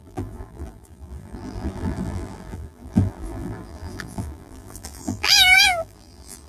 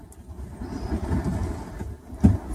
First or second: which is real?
second